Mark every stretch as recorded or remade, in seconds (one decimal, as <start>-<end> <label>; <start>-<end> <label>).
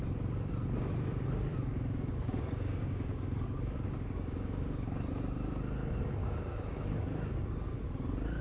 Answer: 0.0-1.5 recorded; 1.5-5.1 remade; 5.1-6.2 recorded; 6.2-7.8 remade; 7.8-8.4 recorded